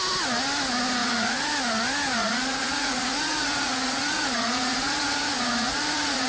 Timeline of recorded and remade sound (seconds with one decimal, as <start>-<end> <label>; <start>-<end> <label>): 0.0-1.0 recorded; 1.0-1.5 remade; 1.5-2.2 recorded; 2.2-6.3 remade